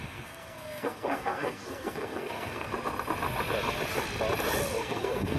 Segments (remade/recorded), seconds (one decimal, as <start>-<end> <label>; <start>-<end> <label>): 0.0-2.7 remade; 2.7-4.8 recorded; 4.8-5.4 remade

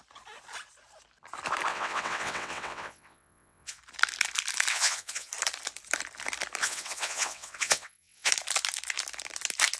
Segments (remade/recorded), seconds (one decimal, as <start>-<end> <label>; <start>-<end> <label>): 0.0-1.7 recorded; 1.7-3.8 remade; 3.8-4.7 recorded; 4.7-5.3 remade; 5.3-6.6 recorded; 6.6-8.3 remade; 8.3-9.8 recorded

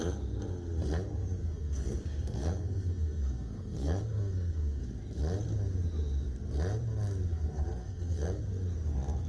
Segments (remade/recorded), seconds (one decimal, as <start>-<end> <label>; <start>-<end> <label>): 0.0-1.4 recorded; 1.4-4.8 remade; 4.8-7.3 recorded; 7.3-8.4 remade; 8.4-9.3 recorded

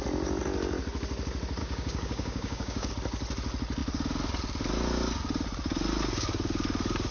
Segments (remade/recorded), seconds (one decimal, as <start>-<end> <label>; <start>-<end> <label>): 0.0-1.6 recorded; 1.6-2.9 remade; 2.9-7.1 recorded

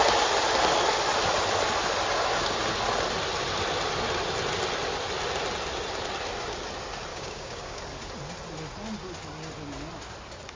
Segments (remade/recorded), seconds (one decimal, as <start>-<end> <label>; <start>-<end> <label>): 0.0-7.1 recorded; 7.1-7.8 remade; 7.8-10.6 recorded